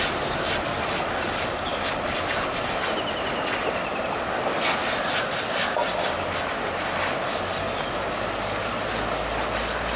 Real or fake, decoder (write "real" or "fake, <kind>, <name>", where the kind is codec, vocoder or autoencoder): real